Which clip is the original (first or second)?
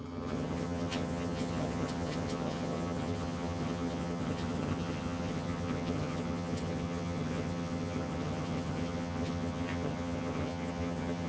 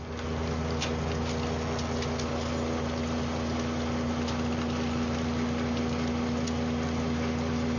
second